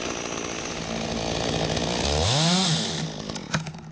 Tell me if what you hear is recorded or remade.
recorded